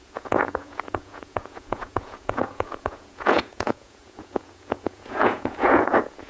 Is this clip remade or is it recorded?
remade